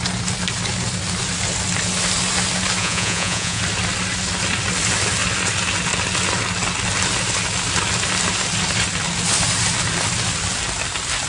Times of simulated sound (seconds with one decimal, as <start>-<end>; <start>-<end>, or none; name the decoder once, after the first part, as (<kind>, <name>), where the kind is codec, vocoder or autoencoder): 2.8-3.6 (vocoder, Vocos)